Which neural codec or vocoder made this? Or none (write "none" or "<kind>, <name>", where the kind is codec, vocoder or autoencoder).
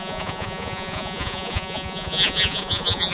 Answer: vocoder, Vocos